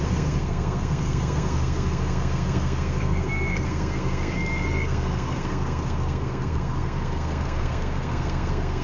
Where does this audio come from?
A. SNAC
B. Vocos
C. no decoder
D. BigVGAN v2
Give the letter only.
A